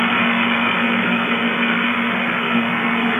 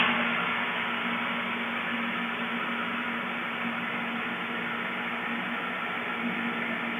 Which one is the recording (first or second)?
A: second